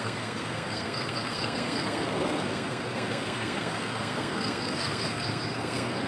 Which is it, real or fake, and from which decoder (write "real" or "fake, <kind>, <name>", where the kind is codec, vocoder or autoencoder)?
fake, codec, SNAC